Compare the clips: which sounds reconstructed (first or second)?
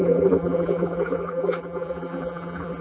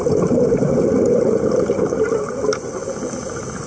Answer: first